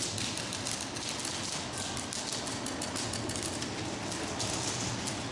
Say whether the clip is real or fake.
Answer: real